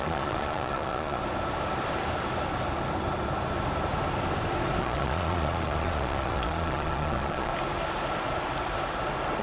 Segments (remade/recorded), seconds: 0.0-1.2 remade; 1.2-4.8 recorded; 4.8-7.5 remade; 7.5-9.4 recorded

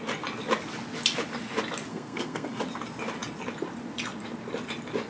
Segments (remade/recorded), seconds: 0.0-1.9 recorded; 1.9-2.6 remade; 2.6-5.1 recorded